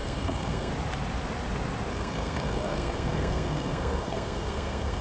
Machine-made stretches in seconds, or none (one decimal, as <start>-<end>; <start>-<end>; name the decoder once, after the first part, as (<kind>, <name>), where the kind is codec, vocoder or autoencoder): 0.0-0.7 (codec, SNAC); 1.9-5.0